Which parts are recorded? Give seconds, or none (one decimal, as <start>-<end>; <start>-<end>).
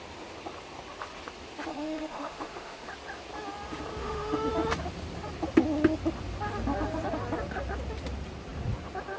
0.0-1.7; 2.9-4.0; 4.5-9.2